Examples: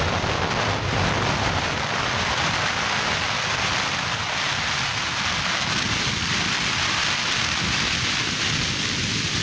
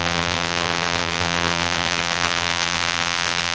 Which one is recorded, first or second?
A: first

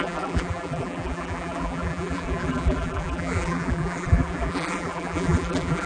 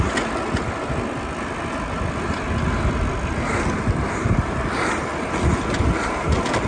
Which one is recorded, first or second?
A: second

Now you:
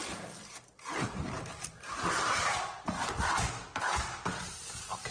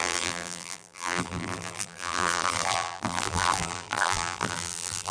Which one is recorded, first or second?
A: first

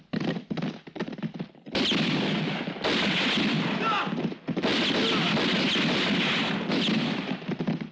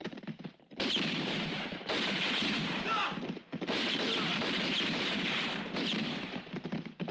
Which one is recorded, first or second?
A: first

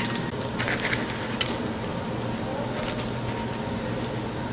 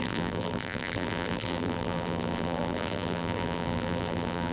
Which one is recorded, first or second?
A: first